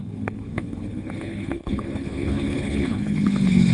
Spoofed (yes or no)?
yes